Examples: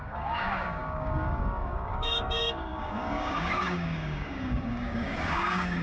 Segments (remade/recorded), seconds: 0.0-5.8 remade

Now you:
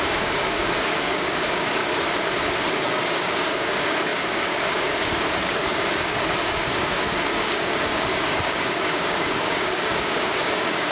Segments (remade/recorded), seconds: 0.0-1.8 remade; 1.8-2.8 recorded; 2.8-10.9 remade

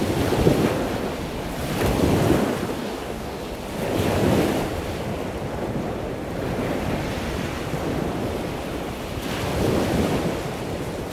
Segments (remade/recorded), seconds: 0.0-2.8 recorded; 2.8-3.4 remade; 3.4-11.1 recorded